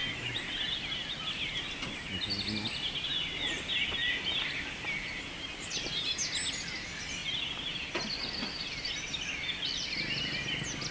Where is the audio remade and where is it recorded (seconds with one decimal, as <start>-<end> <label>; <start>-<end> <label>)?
0.0-4.5 recorded; 4.5-6.1 remade; 6.1-10.9 recorded